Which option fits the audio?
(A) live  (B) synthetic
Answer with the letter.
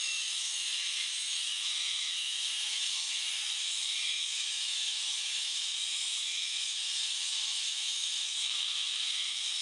B